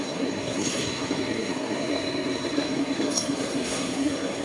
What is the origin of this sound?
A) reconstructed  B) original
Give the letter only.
A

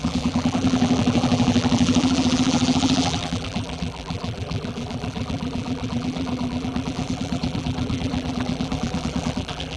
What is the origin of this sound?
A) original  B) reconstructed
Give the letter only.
B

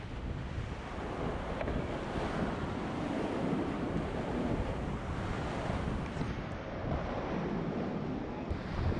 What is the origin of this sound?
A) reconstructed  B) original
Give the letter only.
B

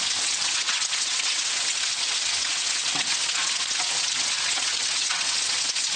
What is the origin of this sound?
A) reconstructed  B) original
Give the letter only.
A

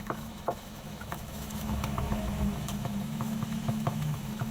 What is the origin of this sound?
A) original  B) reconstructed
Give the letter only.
B